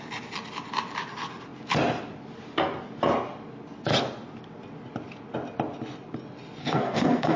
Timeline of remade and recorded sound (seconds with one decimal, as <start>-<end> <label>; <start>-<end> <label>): 0.0-6.6 recorded; 6.6-7.4 remade